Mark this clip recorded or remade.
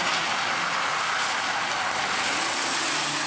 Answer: recorded